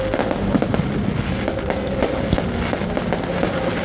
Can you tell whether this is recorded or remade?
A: recorded